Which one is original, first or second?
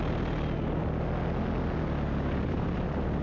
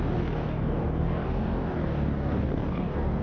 first